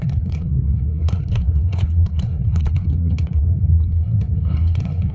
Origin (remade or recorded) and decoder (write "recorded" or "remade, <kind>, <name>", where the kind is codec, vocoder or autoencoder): remade, codec, SNAC